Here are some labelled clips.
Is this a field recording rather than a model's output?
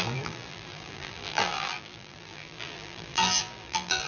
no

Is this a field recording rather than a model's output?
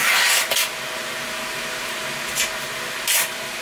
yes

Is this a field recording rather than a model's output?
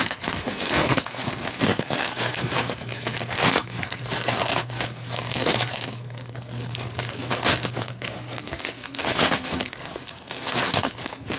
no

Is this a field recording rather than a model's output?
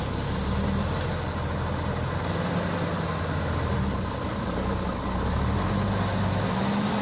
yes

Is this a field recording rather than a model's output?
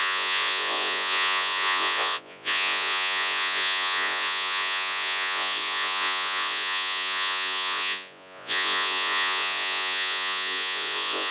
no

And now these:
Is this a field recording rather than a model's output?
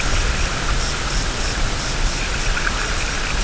yes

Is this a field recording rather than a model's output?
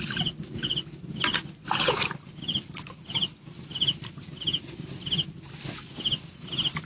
yes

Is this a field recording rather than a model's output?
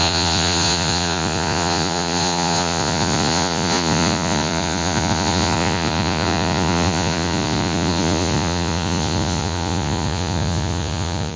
no